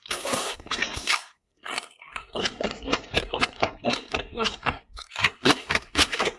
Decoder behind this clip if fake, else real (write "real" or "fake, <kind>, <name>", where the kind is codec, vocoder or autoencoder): fake, codec, SNAC